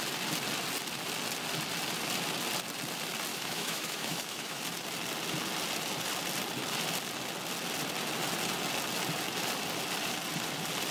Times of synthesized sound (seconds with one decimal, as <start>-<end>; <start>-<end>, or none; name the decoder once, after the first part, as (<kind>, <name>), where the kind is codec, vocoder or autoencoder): 3.3-4.6 (autoencoder, DAC-VAE)